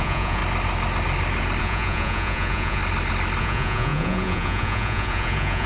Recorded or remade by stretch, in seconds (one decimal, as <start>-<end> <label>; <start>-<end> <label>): 0.0-0.4 remade; 0.4-1.6 recorded; 1.6-2.8 remade; 2.8-3.4 recorded; 3.4-5.7 remade